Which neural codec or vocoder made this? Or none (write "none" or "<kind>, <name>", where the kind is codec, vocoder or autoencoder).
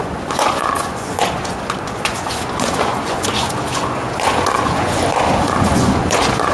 vocoder, Vocos